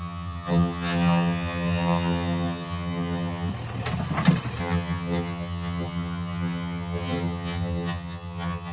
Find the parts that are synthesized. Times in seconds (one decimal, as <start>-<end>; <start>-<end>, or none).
0.0-3.5; 4.6-8.7